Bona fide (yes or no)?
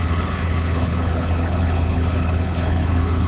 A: no